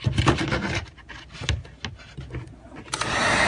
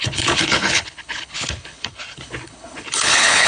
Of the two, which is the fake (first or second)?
second